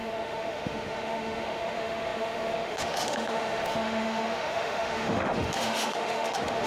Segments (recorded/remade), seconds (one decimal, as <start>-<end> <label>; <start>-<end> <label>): 0.0-6.7 remade